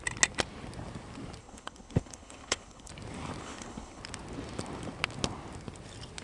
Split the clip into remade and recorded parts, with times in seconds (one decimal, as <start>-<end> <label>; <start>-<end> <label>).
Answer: 0.0-1.4 recorded; 1.4-2.9 remade; 2.9-3.4 recorded; 3.4-4.0 remade; 4.0-6.2 recorded